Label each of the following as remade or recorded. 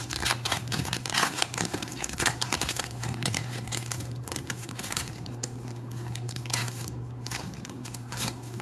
remade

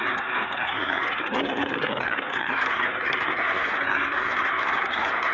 remade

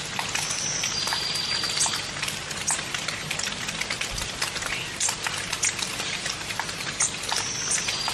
recorded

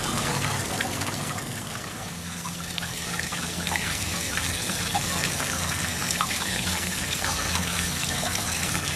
remade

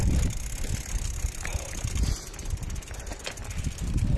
recorded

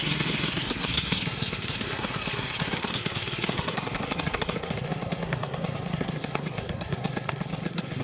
remade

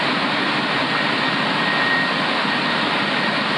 recorded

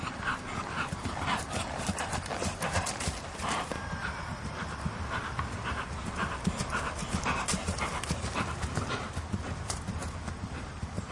recorded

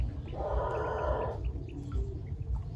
recorded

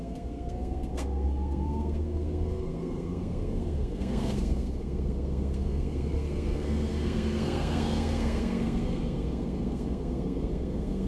remade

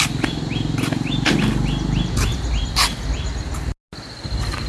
recorded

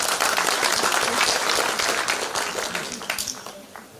recorded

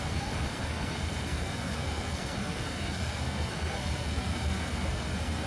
remade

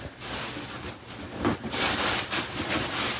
recorded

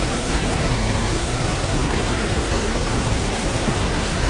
remade